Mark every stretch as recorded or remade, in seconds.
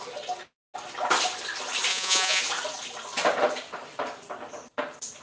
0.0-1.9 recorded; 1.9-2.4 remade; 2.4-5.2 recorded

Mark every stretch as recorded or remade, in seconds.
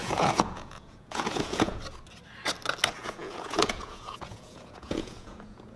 0.0-1.8 remade; 1.8-3.0 recorded; 3.0-5.8 remade